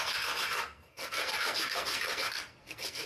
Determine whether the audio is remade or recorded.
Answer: remade